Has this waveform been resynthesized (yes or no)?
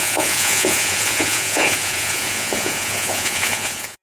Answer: yes